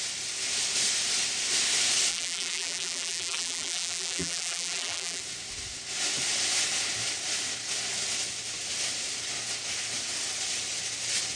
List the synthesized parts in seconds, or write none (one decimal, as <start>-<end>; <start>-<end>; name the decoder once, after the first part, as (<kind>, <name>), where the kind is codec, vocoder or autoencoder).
2.1-5.2 (vocoder, BigVGAN v2)